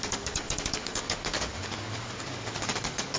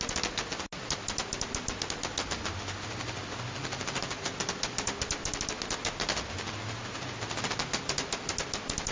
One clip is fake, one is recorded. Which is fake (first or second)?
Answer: first